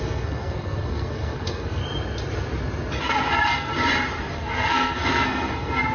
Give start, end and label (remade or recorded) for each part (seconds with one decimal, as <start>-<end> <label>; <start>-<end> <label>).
0.0-1.8 remade; 1.8-3.0 recorded; 3.0-3.7 remade; 3.7-4.4 recorded; 4.4-5.9 remade